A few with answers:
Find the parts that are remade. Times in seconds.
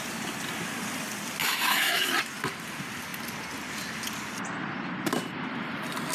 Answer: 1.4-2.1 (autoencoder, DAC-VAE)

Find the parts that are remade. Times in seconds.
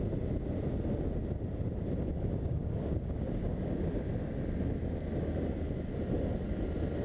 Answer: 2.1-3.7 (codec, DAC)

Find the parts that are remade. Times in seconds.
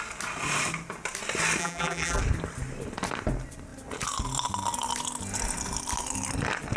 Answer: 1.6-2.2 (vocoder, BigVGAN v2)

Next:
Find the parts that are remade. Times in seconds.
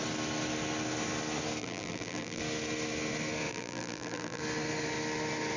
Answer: 1.6-2.4 (vocoder, BigVGAN v2); 3.5-4.4